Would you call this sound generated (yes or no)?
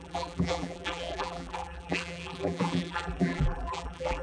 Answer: yes